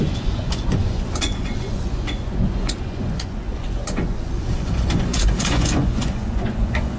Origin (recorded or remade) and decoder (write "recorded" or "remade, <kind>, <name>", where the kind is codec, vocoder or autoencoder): remade, vocoder, Vocos